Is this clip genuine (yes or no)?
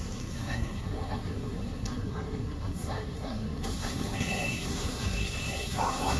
no